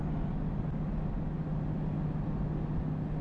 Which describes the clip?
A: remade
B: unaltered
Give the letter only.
B